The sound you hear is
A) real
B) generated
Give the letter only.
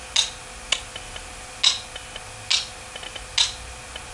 A